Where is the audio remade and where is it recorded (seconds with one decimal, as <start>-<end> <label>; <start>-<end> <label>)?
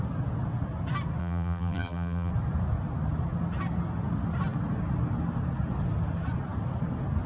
0.0-1.2 recorded; 1.2-2.3 remade; 2.3-7.3 recorded